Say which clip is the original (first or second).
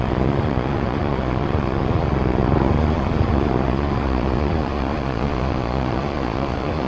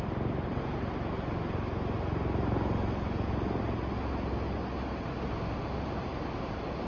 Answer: second